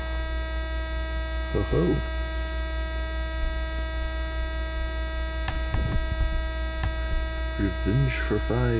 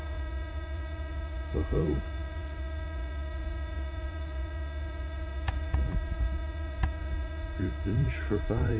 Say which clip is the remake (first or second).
second